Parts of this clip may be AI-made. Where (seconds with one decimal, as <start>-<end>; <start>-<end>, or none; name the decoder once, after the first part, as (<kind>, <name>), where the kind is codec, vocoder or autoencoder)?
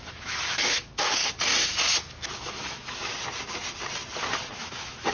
0.0-1.2 (autoencoder, DAC-VAE); 2.4-3.0; 4.6-5.1